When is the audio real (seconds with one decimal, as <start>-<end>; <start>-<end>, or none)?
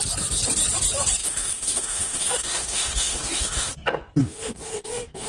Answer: 0.0-1.2; 3.7-4.2